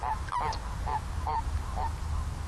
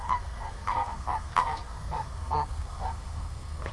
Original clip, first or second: first